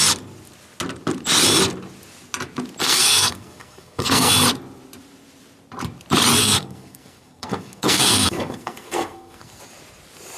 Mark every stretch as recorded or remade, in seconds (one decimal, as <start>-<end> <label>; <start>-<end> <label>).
0.0-2.8 recorded; 2.8-4.3 remade; 4.3-6.4 recorded; 6.4-9.6 remade; 9.6-10.4 recorded